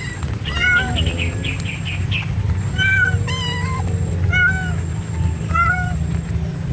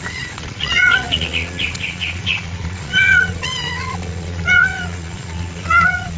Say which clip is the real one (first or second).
first